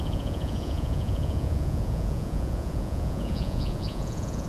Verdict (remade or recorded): remade